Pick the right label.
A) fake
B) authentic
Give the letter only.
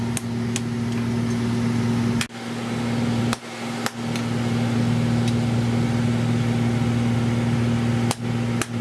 B